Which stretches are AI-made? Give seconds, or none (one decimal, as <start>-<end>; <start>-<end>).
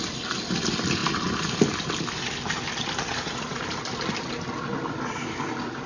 none